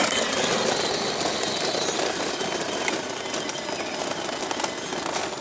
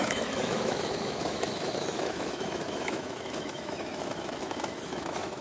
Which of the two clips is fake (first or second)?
second